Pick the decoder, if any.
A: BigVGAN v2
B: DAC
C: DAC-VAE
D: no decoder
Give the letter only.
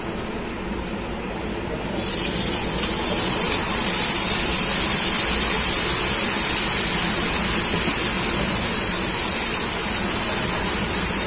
D